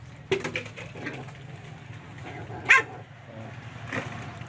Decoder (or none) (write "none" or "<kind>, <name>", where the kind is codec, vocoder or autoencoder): none